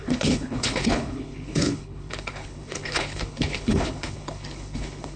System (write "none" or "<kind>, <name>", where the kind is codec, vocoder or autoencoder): codec, HILCodec